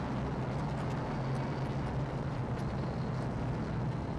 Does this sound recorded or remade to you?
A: recorded